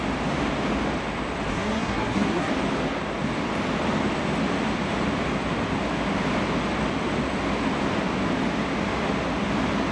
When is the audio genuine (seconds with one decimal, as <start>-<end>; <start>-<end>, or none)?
0.0-1.5; 2.5-9.9